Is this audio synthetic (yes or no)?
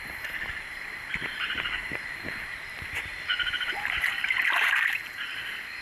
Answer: yes